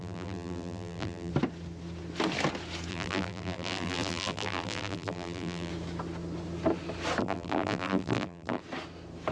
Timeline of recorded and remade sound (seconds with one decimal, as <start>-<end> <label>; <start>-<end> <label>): 0.0-1.3 remade; 1.3-2.9 recorded; 2.9-5.7 remade; 5.7-7.2 recorded; 7.2-8.6 remade; 8.6-9.3 recorded